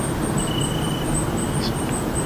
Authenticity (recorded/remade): recorded